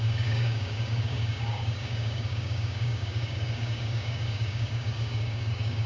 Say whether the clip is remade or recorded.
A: remade